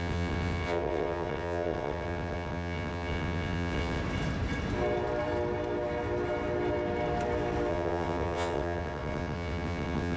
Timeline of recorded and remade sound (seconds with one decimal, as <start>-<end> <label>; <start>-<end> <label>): 0.0-4.0 remade; 4.0-7.7 recorded; 7.7-10.2 remade